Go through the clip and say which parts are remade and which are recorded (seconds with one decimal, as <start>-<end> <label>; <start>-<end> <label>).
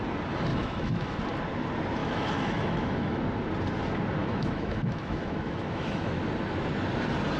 0.0-0.5 recorded; 0.5-1.2 remade; 1.2-2.0 recorded; 2.0-3.2 remade; 3.2-4.2 recorded; 4.2-6.2 remade; 6.2-7.4 recorded